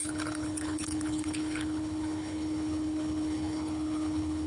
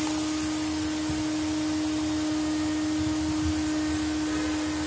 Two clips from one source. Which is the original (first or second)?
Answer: second